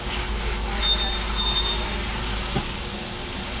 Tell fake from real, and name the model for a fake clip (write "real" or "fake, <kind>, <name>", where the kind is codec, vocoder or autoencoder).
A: real